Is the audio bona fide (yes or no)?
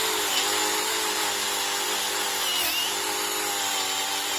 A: yes